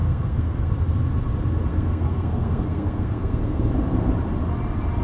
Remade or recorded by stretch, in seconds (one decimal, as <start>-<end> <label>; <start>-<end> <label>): 0.0-0.7 remade; 0.7-1.7 recorded; 1.7-3.7 remade; 3.7-5.0 recorded